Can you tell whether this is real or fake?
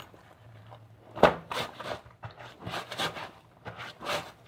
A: fake